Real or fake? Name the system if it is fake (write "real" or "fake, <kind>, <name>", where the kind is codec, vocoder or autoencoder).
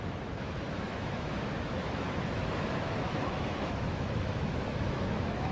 fake, autoencoder, DAC-VAE